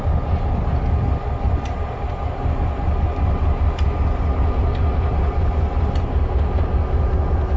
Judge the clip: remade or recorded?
recorded